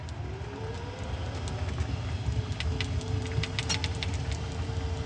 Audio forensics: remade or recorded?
recorded